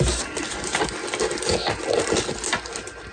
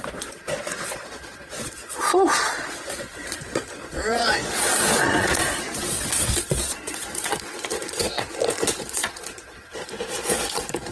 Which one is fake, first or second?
second